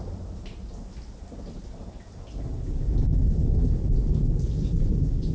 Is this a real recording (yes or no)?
yes